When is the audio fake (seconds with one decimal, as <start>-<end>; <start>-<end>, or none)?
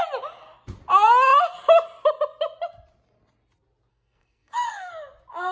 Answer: 3.9-4.9